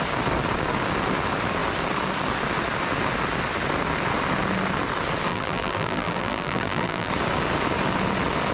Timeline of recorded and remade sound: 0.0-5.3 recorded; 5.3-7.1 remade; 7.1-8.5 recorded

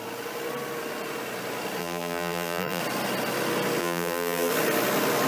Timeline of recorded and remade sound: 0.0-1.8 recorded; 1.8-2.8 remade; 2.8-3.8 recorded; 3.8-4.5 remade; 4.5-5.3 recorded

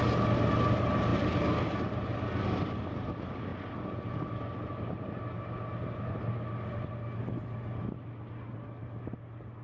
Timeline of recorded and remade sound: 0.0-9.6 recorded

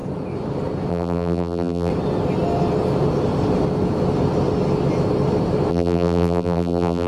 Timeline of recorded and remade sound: 0.0-0.9 recorded; 0.9-1.9 remade; 1.9-5.7 recorded; 5.7-7.1 remade

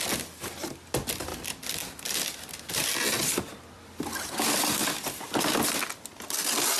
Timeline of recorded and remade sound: 0.0-6.8 recorded

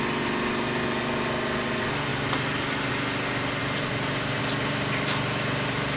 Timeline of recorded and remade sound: 0.0-2.1 recorded; 2.1-2.9 remade; 2.9-3.6 recorded; 3.6-4.4 remade; 4.4-6.0 recorded

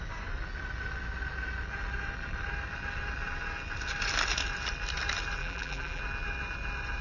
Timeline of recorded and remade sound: 0.0-5.4 recorded; 5.4-6.0 remade; 6.0-7.0 recorded

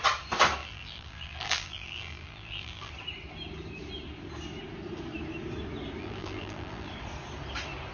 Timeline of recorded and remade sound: 0.0-0.6 recorded; 0.6-2.9 remade; 2.9-6.0 recorded; 6.0-6.9 remade; 6.9-7.9 recorded